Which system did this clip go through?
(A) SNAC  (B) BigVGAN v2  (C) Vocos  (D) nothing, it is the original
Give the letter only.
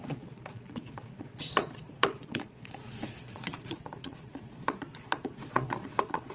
C